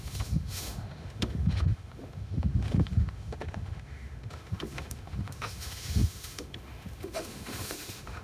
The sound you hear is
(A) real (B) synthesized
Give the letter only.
B